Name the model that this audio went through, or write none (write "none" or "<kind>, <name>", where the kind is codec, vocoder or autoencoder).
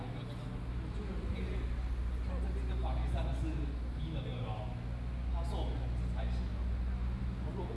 none